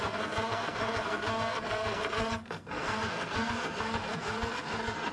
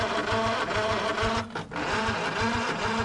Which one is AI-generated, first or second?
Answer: first